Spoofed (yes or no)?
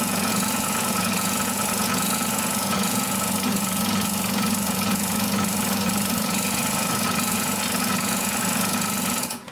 yes